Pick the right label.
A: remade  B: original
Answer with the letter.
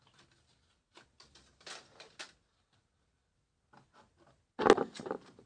B